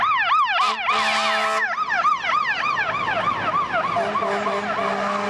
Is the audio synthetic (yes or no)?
no